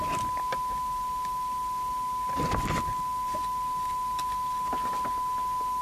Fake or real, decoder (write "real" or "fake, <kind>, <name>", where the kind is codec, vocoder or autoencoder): real